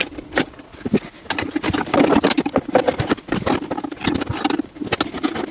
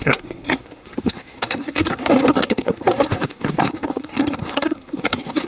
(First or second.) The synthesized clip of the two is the second